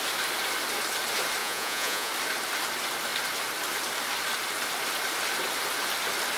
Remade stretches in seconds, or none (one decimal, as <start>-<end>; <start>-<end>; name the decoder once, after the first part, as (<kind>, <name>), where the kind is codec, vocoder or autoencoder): 1.4-2.1 (vocoder, Vocos)